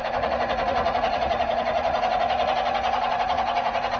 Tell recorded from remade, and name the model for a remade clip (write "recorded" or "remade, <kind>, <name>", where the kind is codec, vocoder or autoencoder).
remade, vocoder, Vocos